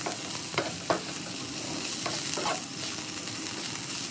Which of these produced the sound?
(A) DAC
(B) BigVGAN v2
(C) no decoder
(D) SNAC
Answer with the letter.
C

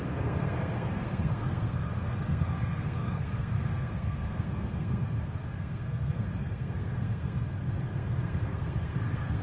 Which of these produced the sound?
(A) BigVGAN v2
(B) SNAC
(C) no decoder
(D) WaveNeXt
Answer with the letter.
B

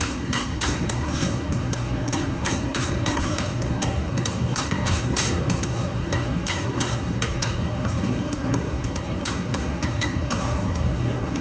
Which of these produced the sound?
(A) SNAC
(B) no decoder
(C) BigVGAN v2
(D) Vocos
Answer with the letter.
A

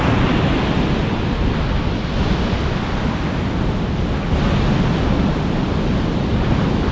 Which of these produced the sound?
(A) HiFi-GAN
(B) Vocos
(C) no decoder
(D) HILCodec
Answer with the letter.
C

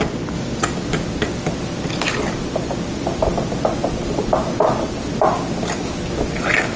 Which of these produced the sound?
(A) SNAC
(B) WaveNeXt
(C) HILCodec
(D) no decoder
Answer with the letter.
D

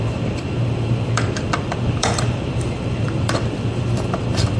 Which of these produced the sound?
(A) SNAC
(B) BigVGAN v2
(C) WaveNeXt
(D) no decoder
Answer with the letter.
B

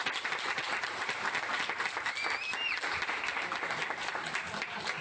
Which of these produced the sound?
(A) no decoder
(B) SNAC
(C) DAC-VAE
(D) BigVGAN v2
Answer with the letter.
A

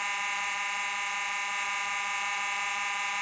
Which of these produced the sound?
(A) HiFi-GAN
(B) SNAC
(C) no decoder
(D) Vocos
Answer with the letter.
C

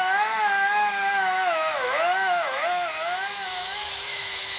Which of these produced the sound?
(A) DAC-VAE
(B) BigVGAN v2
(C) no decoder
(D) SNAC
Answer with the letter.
A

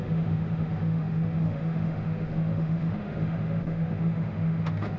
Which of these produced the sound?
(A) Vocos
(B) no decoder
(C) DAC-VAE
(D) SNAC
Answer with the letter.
C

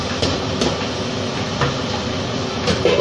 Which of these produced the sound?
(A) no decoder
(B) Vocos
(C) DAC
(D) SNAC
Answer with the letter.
A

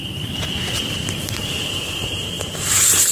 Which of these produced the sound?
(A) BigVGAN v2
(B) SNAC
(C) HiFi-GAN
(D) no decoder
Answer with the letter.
A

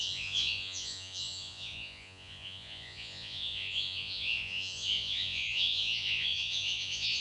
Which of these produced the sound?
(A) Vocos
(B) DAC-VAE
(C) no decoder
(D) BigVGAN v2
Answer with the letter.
A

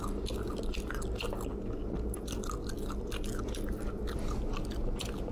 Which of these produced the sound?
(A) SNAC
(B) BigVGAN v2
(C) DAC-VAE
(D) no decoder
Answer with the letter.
D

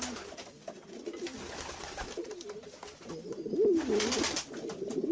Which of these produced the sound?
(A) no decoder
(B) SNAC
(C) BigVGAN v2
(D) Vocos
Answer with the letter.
A